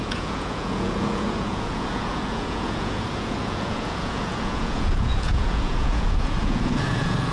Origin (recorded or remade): remade